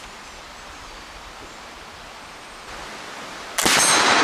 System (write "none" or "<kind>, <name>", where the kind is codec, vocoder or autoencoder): none